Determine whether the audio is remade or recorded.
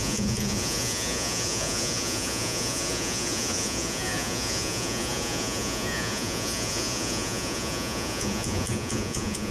remade